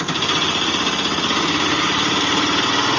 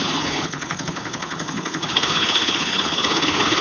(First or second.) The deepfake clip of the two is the second